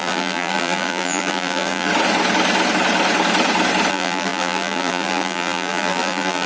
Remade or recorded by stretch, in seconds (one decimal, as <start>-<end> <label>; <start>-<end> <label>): 0.0-1.9 remade; 1.9-3.9 recorded; 3.9-6.5 remade